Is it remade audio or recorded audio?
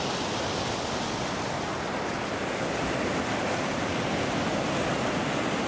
recorded